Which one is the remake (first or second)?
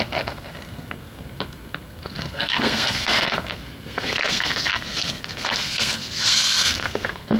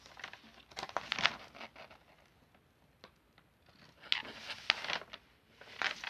first